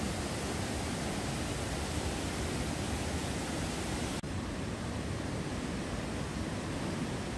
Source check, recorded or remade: recorded